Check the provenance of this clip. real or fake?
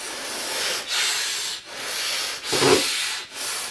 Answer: real